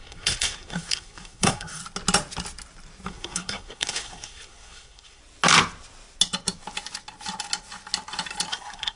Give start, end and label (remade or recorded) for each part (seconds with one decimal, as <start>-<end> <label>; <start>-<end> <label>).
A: 0.0-1.8 remade; 1.8-3.1 recorded; 3.1-5.2 remade; 5.2-8.5 recorded; 8.5-9.0 remade